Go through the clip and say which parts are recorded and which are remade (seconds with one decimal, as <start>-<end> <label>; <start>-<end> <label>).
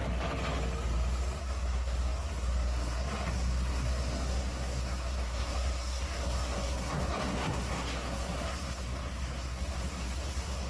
0.0-1.4 recorded; 1.4-10.7 remade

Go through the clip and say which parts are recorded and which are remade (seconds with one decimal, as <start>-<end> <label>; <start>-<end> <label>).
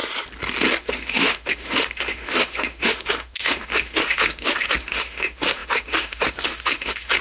0.0-0.8 recorded; 0.8-7.2 remade